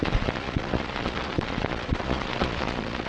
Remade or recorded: remade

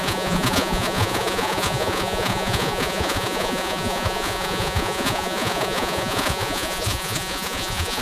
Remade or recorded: remade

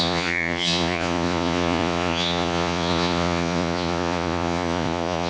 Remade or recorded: remade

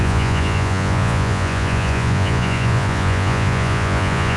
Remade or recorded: remade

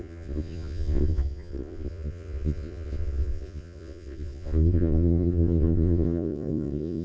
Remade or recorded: remade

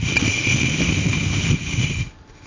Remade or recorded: recorded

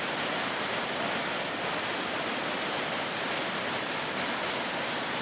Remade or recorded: recorded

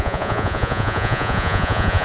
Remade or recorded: remade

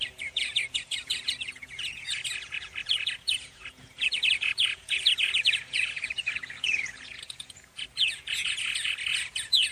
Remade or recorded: remade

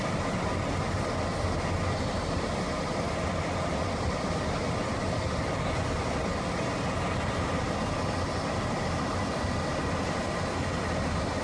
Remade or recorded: recorded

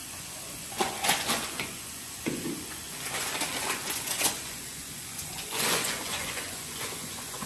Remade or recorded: remade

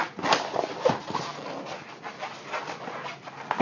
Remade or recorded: recorded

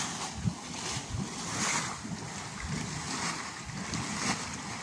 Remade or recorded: recorded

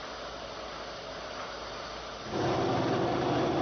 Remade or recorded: recorded